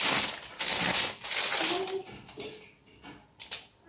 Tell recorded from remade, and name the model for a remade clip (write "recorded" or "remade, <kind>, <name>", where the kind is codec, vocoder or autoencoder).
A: recorded